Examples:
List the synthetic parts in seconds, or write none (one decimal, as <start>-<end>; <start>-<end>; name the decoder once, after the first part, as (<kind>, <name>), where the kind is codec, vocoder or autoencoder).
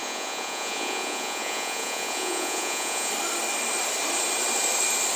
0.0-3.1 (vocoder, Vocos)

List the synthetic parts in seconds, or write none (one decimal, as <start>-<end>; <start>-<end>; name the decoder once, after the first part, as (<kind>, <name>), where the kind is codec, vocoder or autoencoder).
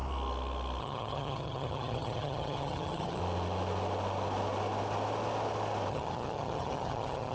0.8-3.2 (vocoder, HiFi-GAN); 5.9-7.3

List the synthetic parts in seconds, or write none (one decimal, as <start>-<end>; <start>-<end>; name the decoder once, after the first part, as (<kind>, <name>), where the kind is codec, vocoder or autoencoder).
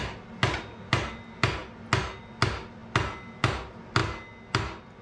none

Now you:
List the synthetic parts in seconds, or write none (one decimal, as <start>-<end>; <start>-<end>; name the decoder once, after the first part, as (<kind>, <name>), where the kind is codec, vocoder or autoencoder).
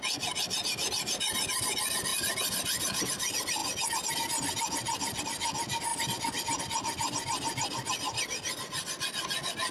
2.1-3.0 (vocoder, BigVGAN v2)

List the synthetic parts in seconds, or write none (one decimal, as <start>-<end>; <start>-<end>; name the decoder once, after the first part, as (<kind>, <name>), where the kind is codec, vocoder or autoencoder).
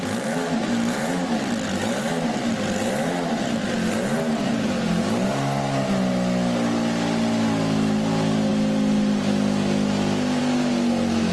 none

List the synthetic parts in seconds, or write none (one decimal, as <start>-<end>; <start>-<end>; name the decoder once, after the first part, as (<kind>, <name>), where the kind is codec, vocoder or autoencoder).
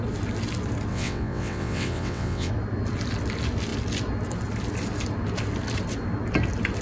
0.9-2.5 (vocoder, WaveNeXt)